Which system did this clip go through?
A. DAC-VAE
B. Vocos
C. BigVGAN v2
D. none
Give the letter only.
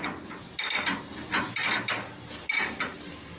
D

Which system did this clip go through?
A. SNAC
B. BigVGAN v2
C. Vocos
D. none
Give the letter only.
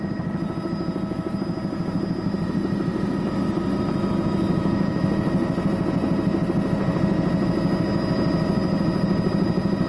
D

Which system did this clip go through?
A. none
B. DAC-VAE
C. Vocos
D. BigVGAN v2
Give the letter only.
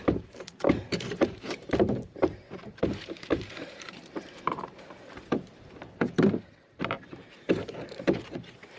D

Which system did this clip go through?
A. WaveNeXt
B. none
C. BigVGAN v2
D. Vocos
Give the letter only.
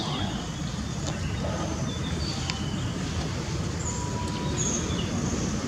C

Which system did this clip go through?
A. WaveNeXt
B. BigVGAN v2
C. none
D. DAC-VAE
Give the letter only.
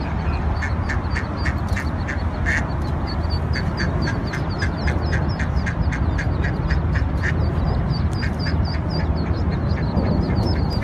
C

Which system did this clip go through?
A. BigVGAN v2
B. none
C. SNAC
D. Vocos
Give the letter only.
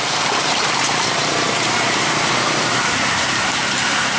A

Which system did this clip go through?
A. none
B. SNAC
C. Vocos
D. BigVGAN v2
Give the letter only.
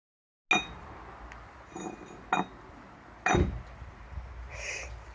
A